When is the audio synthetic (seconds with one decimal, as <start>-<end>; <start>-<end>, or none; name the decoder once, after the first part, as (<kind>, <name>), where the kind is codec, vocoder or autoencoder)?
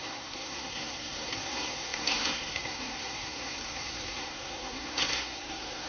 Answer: 0.0-5.9 (codec, SNAC)